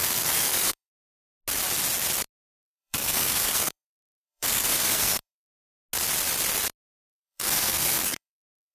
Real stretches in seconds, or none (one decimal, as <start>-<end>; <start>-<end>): 0.9-2.5; 5.5-7.0

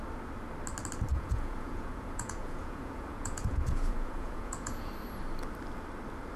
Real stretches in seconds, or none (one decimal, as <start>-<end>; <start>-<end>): 0.0-1.1; 4.9-6.4

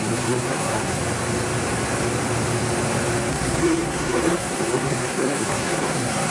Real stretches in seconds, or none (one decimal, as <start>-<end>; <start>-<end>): 1.0-3.3